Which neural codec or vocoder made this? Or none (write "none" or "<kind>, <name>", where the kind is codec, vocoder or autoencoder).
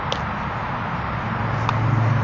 none